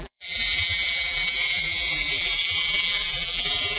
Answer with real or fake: fake